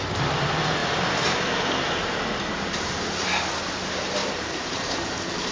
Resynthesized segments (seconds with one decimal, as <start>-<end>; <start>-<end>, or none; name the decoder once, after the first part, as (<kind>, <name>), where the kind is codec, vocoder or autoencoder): 0.8-2.9 (vocoder, BigVGAN v2); 4.2-4.8